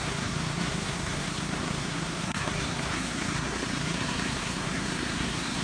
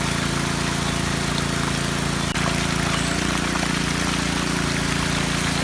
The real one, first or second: second